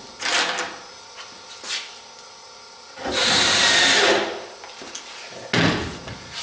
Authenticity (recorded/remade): recorded